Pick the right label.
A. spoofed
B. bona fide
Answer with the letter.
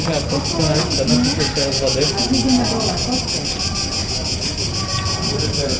B